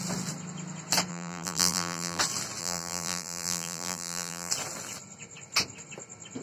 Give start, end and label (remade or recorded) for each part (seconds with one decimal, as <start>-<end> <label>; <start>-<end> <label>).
0.0-1.1 recorded; 1.1-2.2 remade; 2.2-2.6 recorded; 2.6-4.5 remade; 4.5-6.4 recorded